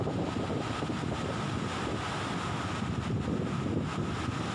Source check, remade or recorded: recorded